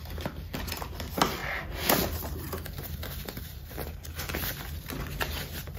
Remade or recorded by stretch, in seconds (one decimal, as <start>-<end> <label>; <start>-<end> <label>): 0.0-5.8 recorded